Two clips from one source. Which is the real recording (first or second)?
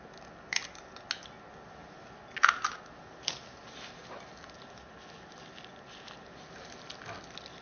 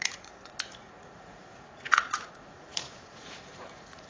first